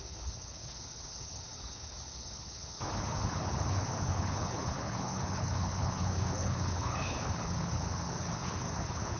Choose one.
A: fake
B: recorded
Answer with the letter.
A